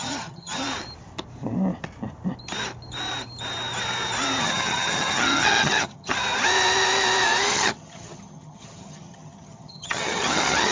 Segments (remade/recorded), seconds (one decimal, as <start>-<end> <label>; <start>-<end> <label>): 0.0-0.6 remade; 0.6-4.4 recorded; 4.4-6.1 remade; 6.1-7.5 recorded; 7.5-10.7 remade